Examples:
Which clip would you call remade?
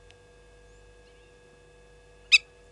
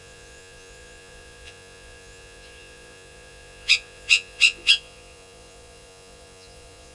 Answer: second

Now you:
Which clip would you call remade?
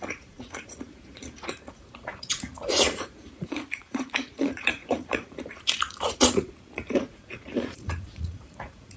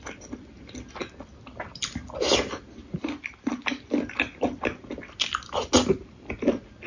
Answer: first